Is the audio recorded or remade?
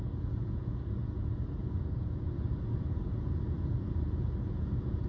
remade